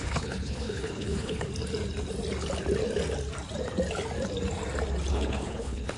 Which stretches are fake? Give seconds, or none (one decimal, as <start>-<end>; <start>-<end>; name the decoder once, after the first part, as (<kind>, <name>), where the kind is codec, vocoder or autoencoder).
0.0-1.5 (codec, HILCodec); 5.1-6.0